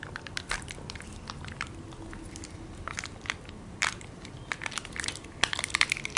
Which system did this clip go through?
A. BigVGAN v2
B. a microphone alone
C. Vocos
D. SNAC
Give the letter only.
A